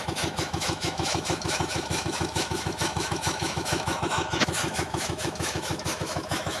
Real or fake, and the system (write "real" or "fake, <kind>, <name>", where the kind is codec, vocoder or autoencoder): fake, autoencoder, DAC-VAE